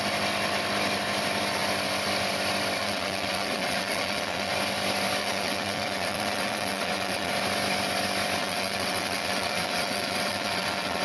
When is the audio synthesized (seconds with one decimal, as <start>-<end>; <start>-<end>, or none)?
2.8-4.5; 5.2-7.3; 8.4-11.0